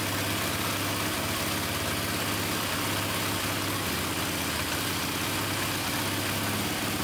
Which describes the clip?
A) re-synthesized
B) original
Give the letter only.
B